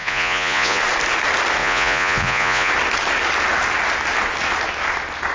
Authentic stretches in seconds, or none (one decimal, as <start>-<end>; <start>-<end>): 0.8-1.6; 2.7-5.3